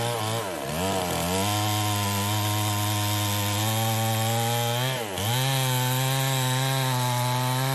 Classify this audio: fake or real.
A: real